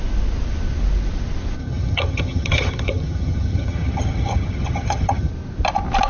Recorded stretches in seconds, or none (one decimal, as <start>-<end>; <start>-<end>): 0.0-1.6; 5.3-6.1